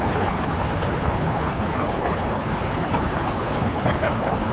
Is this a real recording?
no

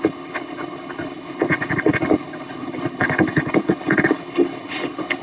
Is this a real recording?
no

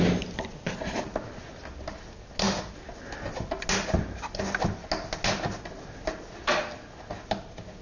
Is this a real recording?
yes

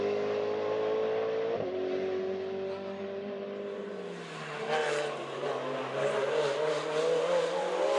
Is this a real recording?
yes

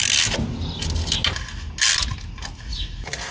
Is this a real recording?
yes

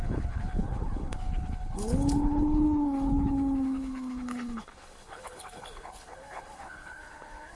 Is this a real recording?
no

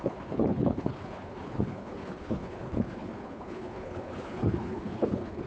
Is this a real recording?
no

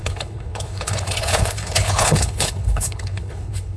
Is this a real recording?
no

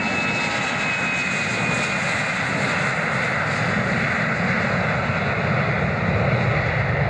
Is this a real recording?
yes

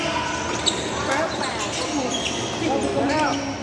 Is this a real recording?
yes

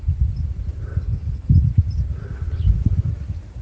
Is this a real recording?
yes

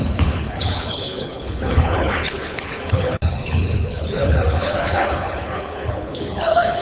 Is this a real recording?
no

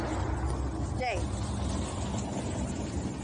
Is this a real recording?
yes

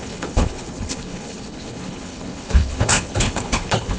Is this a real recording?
no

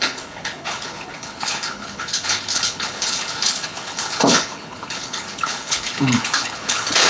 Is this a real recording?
no